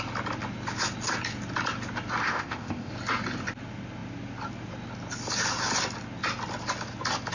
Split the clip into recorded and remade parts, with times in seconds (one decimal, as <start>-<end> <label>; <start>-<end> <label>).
0.0-2.2 recorded; 2.2-2.9 remade; 2.9-7.3 recorded

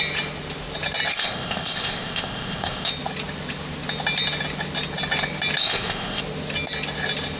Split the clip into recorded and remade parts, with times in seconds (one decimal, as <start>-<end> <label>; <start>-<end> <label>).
0.0-1.1 recorded; 1.1-2.9 remade; 2.9-5.6 recorded; 5.6-6.2 remade; 6.2-7.4 recorded

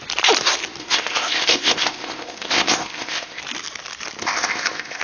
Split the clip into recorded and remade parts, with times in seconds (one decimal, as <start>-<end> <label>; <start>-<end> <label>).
0.0-0.8 recorded; 0.8-3.4 remade; 3.4-4.2 recorded; 4.2-5.0 remade

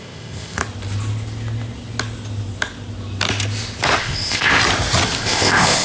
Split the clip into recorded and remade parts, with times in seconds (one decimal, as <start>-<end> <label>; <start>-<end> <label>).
0.0-0.6 remade; 0.6-4.0 recorded; 4.0-4.5 remade; 4.5-5.2 recorded; 5.2-5.8 remade

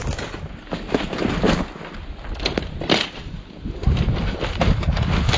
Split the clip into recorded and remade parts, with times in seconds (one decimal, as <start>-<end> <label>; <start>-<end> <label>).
0.0-5.4 recorded

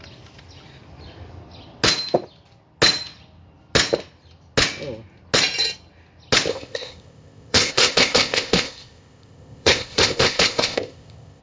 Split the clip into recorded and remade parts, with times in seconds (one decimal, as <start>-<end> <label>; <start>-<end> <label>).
0.0-6.5 recorded; 6.5-11.4 remade

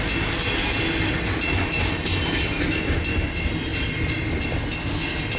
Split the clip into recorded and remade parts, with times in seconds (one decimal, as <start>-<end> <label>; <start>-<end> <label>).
0.0-5.4 recorded

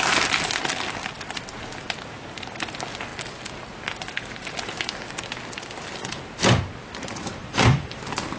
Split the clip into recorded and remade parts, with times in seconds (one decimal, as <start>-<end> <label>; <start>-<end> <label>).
0.0-8.4 recorded